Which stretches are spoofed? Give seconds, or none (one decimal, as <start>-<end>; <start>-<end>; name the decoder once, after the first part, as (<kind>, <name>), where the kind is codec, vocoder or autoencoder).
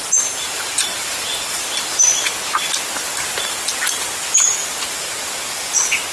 0.0-1.3 (vocoder, BigVGAN v2); 3.0-6.1